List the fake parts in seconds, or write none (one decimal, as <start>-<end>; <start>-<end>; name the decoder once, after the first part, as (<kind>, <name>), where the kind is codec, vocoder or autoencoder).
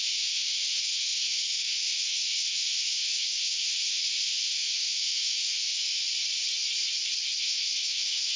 0.0-6.0 (autoencoder, DAC-VAE); 7.4-8.4